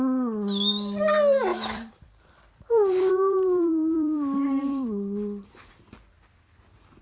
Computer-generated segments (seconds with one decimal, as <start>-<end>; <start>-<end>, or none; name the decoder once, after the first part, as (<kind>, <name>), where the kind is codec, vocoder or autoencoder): 1.5-5.7 (vocoder, BigVGAN v2)